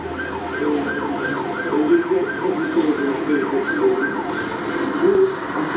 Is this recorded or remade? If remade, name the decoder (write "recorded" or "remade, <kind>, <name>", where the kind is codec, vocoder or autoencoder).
recorded